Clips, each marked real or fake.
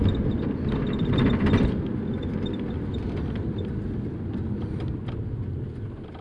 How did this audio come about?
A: real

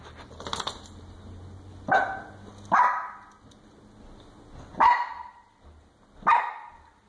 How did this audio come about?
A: real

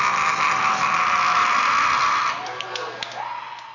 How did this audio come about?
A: real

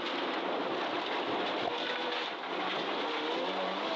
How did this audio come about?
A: real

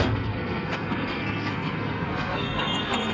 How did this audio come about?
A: fake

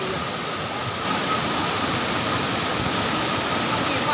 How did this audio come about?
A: real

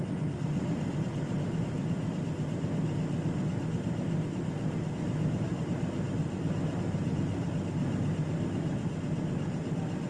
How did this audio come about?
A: real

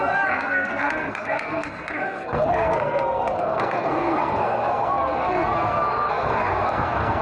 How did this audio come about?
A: fake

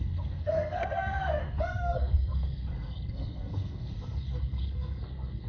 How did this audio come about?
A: fake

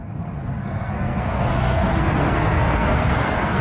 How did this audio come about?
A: fake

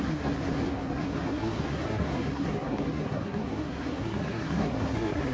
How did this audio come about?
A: fake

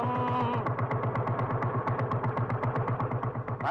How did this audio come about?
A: real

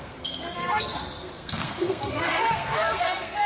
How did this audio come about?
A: fake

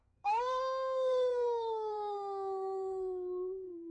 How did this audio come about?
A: fake